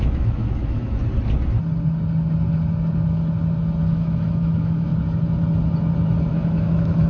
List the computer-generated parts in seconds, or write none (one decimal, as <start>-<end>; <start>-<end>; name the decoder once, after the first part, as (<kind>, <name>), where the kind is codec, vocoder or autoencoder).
0.0-1.0 (autoencoder, DAC-VAE); 3.9-4.9; 6.3-7.1